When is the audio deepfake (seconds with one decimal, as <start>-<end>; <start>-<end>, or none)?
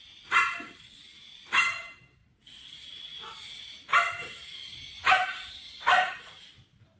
none